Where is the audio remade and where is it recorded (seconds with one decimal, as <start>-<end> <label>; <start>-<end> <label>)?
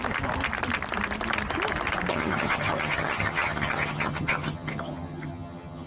0.0-2.1 recorded; 2.1-5.9 remade